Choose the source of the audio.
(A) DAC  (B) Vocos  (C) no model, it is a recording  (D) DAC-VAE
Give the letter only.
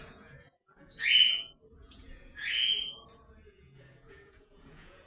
B